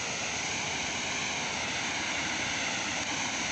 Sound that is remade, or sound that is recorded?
recorded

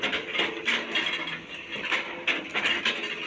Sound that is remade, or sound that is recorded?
recorded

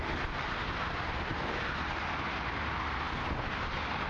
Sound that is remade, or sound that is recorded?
recorded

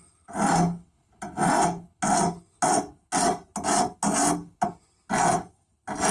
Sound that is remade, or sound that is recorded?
recorded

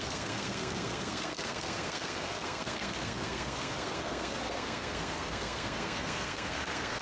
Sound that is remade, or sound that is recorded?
remade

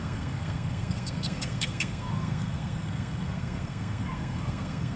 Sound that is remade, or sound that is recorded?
remade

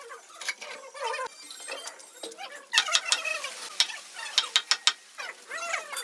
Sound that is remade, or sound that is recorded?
recorded